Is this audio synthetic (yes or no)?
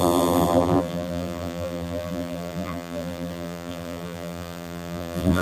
yes